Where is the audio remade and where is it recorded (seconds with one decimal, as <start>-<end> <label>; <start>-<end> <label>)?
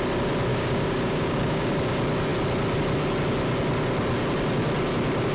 0.0-0.5 recorded; 0.5-1.7 remade; 1.7-5.3 recorded